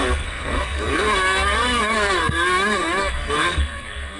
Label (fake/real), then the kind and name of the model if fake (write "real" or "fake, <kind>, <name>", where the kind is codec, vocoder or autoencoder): fake, codec, SNAC